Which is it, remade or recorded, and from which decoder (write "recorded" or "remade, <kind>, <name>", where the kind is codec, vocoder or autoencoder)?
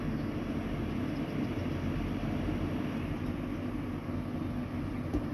recorded